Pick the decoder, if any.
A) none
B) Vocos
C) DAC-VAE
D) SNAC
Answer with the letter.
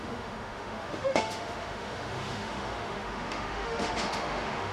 C